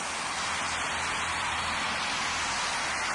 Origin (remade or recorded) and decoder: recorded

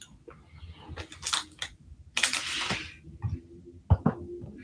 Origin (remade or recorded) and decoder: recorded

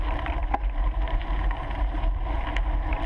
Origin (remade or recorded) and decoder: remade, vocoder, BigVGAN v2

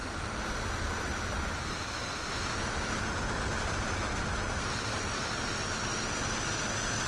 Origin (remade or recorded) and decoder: recorded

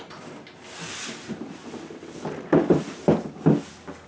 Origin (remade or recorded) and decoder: recorded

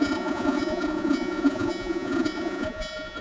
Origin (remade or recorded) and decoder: remade, vocoder, Vocos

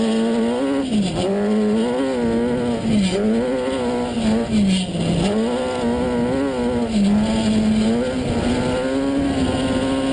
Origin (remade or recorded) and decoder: recorded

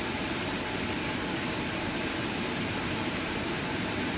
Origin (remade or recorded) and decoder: remade, vocoder, BigVGAN v2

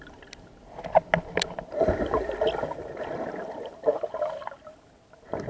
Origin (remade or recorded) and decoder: recorded